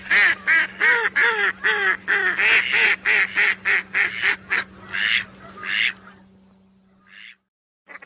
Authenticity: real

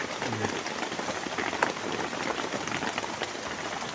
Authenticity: real